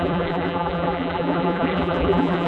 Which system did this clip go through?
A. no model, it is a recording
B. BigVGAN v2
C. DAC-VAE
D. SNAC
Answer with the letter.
B